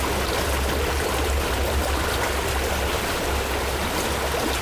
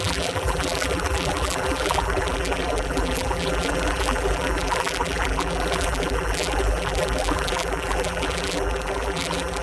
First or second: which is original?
first